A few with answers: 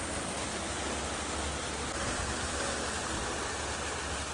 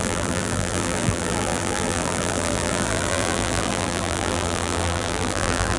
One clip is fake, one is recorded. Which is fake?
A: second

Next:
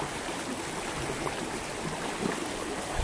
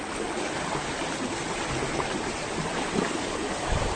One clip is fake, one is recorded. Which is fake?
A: first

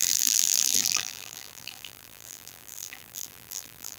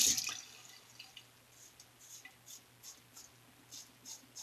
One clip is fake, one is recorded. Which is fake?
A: first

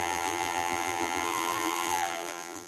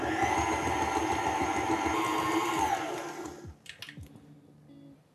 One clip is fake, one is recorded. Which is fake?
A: first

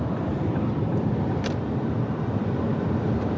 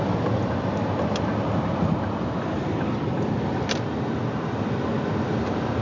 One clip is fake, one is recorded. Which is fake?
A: first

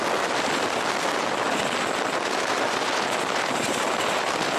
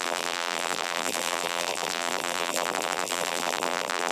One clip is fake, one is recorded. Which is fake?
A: second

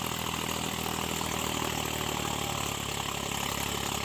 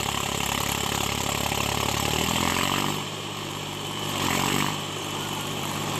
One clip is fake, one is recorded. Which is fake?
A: second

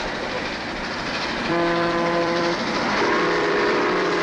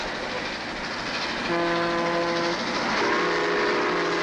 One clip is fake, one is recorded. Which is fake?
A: first